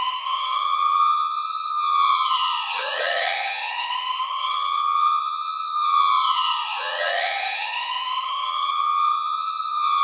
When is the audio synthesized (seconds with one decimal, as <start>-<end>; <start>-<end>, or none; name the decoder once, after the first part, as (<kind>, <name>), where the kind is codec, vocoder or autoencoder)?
0.0-10.0 (vocoder, HiFi-GAN)